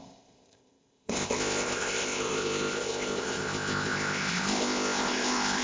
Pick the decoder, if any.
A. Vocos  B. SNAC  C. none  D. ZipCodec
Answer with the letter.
D